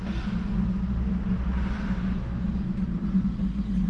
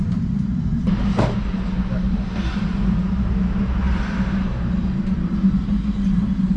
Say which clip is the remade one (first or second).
second